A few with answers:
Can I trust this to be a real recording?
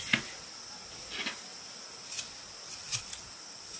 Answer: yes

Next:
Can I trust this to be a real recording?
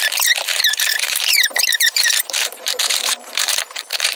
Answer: no